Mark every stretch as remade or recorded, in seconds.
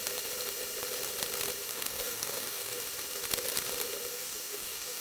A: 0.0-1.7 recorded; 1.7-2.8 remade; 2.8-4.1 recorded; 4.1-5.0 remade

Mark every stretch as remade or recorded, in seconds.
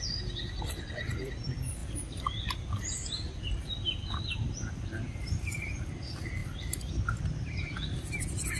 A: 0.0-8.6 recorded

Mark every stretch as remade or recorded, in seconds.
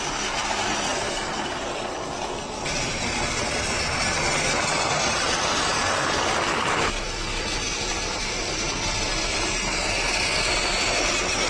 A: 0.0-0.9 recorded; 0.9-1.7 remade; 1.7-11.5 recorded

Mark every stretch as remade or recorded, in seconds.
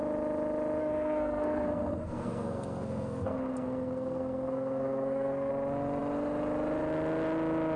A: 0.0-0.8 recorded; 0.8-5.5 remade; 5.5-7.8 recorded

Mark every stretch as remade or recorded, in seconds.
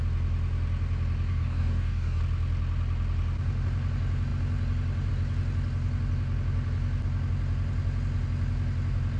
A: 0.0-1.3 recorded; 1.3-2.2 remade; 2.2-9.2 recorded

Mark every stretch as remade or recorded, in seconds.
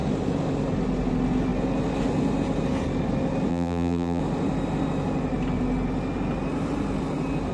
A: 0.0-3.5 recorded; 3.5-4.2 remade; 4.2-7.5 recorded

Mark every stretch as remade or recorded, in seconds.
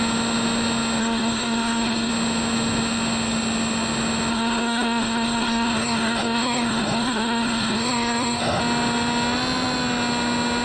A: 0.0-1.0 recorded; 1.0-2.1 remade; 2.1-4.3 recorded; 4.3-8.6 remade; 8.6-10.6 recorded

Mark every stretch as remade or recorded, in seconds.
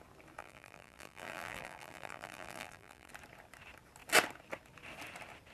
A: 0.0-0.4 recorded; 0.4-3.1 remade; 3.1-5.5 recorded